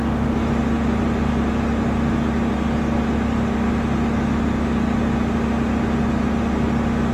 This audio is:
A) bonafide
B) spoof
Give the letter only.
A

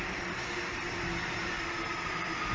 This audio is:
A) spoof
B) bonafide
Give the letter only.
B